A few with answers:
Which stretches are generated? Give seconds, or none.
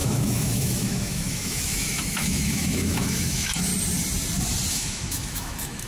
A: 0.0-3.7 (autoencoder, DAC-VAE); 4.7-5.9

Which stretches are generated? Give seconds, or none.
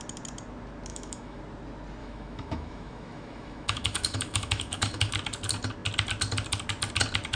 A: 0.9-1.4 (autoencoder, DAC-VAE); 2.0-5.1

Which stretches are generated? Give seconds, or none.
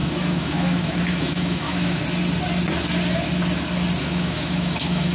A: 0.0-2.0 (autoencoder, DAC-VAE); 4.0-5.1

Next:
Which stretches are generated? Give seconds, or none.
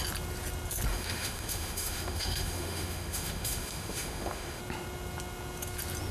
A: 0.9-4.6 (autoencoder, DAC-VAE)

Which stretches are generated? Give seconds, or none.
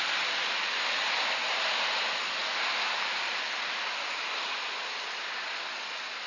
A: none